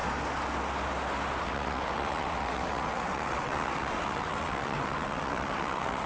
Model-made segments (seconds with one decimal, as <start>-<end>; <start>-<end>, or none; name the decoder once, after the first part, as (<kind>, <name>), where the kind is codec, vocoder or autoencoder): 1.4-6.1 (vocoder, WaveNeXt)